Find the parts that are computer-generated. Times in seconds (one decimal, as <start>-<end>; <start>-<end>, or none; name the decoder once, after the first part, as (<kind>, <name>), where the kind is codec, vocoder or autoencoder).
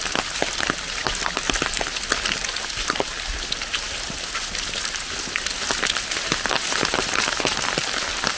none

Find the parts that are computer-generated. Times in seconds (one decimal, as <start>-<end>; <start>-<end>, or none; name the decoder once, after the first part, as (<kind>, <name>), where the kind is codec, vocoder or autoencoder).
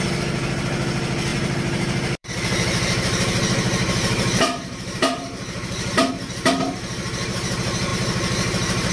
1.3-6.1 (vocoder, BigVGAN v2); 7.9-8.9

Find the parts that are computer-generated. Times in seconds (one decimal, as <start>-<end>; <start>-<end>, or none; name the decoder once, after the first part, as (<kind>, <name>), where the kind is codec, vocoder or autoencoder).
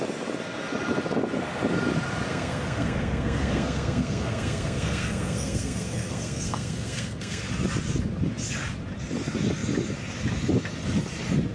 2.3-7.4 (codec, SNAC)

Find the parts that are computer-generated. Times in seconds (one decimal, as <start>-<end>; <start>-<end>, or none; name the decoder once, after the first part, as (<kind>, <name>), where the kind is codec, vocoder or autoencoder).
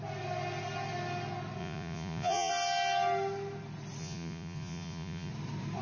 1.6-2.5 (vocoder, Vocos); 4.0-5.3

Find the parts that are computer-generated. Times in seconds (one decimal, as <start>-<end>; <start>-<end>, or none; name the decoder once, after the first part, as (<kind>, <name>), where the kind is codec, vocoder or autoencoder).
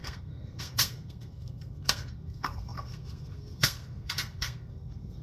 0.0-5.2 (codec, SNAC)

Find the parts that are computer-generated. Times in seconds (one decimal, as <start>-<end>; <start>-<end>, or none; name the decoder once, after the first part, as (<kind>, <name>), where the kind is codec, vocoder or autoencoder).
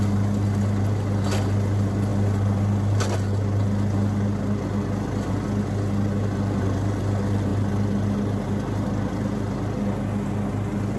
none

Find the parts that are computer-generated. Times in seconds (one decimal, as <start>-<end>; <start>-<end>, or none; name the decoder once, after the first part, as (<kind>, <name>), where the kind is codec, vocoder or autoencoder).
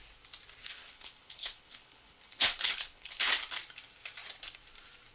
0.6-3.2 (codec, HILCodec)